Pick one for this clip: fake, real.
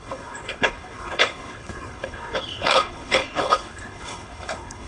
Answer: fake